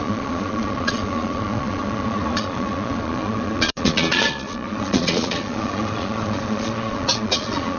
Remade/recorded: remade